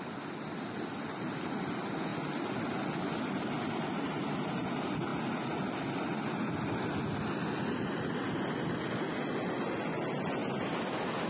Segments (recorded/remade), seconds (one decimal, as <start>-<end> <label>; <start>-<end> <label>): 0.0-11.3 recorded